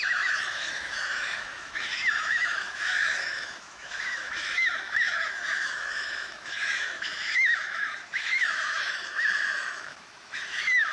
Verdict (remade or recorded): remade